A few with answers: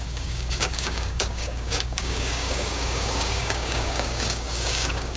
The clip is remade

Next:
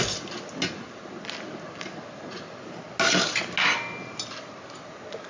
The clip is recorded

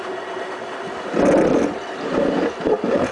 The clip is recorded